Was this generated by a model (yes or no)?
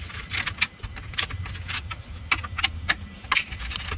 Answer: no